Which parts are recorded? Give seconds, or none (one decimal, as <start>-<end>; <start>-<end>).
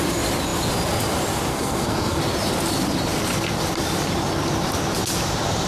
0.0-1.5; 2.2-5.7